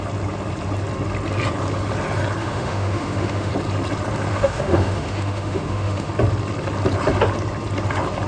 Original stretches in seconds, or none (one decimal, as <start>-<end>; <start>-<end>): 0.0-2.4; 3.5-4.3; 6.1-8.3